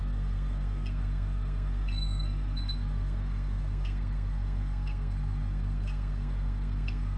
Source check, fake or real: fake